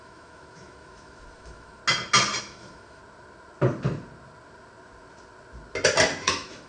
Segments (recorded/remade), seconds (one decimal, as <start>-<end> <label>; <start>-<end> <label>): 0.0-1.8 remade; 1.8-2.4 recorded; 2.4-3.0 remade; 3.0-6.2 recorded; 6.2-6.7 remade